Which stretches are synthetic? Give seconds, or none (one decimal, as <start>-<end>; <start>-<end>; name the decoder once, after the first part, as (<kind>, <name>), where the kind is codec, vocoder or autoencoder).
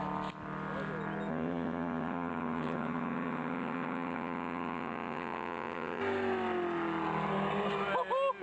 1.3-6.0 (vocoder, HiFi-GAN)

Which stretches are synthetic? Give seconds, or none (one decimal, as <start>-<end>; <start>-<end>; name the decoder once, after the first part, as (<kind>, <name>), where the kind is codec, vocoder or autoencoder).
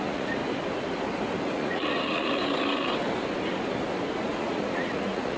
0.0-0.4 (vocoder, Vocos); 1.4-2.4; 4.2-5.4